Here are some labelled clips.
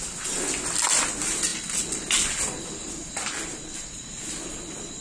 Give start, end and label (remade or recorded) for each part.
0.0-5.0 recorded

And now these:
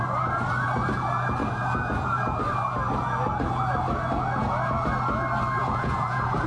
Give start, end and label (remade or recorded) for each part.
0.0-5.6 recorded; 5.6-6.5 remade

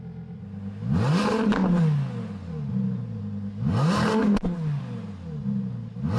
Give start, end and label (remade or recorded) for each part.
0.0-6.2 recorded